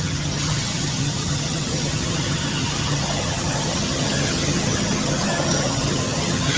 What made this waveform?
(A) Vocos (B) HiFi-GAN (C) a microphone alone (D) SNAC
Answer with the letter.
B